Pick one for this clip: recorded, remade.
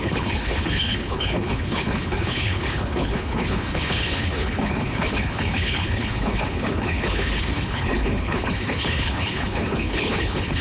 remade